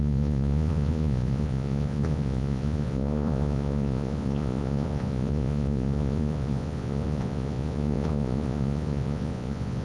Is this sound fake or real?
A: fake